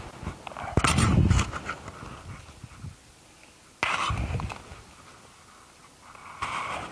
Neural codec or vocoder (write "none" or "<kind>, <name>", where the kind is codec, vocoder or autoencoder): none